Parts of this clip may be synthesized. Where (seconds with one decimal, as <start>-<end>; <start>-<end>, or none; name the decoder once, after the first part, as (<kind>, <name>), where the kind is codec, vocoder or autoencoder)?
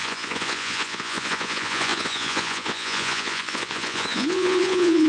0.0-5.1 (vocoder, Vocos)